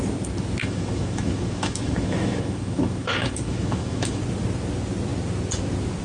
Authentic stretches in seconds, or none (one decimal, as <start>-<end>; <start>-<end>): 0.0-0.6; 4.2-6.0